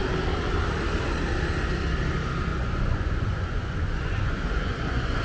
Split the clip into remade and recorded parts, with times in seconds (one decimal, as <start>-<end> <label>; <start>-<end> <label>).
0.0-2.5 recorded; 2.5-5.2 remade